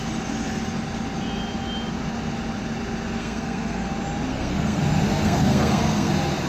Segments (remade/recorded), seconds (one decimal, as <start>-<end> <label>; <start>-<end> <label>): 0.0-3.2 recorded; 3.2-3.9 remade; 3.9-4.3 recorded; 4.3-4.8 remade; 4.8-5.2 recorded; 5.2-6.1 remade; 6.1-6.5 recorded